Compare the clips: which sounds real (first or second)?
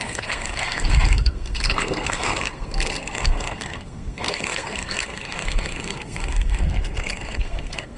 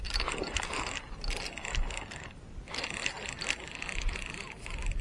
second